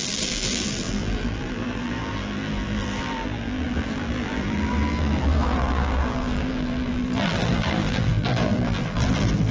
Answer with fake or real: fake